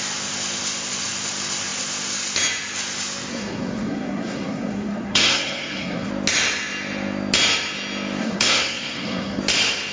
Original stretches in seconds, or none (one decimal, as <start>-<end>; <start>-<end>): 0.0-3.3; 6.1-8.2; 9.4-9.9

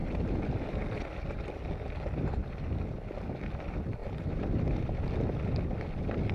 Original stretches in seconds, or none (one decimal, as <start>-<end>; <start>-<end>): 0.8-2.4; 3.5-4.0; 5.1-6.3

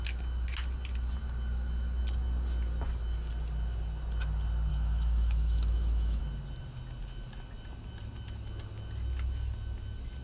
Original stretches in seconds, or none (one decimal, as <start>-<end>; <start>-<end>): 0.0-4.7; 6.2-10.2